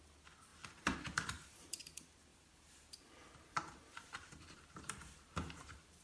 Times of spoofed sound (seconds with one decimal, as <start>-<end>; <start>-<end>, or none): 0.5-1.8; 2.3-6.0